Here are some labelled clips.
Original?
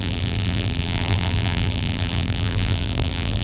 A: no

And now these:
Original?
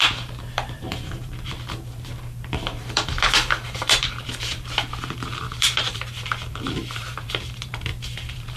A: no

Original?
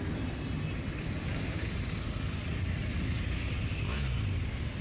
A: yes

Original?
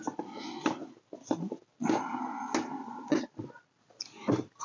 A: yes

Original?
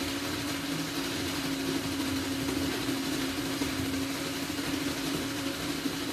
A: yes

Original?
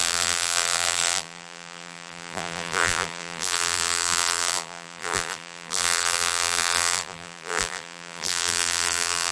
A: no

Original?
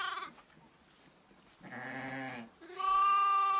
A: yes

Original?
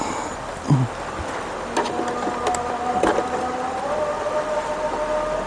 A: yes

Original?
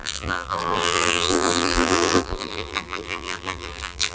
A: no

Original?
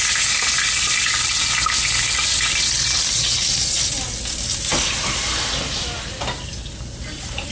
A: yes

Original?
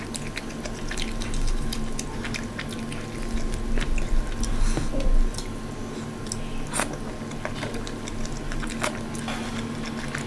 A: yes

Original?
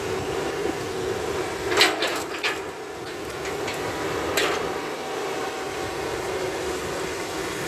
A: yes